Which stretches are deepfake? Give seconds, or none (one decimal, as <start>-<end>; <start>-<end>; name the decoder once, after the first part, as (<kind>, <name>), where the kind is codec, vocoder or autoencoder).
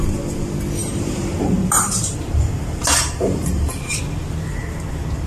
0.8-4.0 (vocoder, BigVGAN v2)